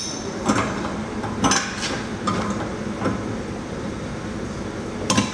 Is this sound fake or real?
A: real